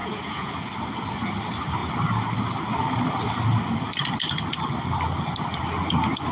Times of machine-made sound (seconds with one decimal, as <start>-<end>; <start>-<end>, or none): 0.0-0.5